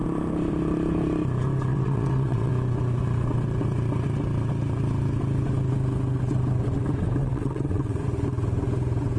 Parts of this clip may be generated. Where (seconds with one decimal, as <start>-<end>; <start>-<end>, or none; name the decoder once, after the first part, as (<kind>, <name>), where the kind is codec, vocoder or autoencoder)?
1.7-2.5 (vocoder, WaveNeXt); 7.2-8.0